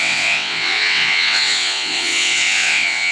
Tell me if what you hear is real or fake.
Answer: fake